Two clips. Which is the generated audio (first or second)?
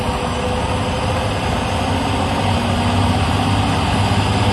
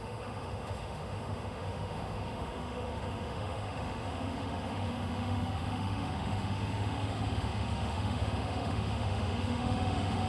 second